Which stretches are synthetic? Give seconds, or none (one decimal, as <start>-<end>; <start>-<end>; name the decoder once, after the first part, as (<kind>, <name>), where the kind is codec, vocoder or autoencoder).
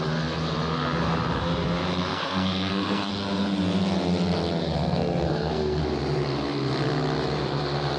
2.1-3.1 (codec, SNAC); 4.6-5.8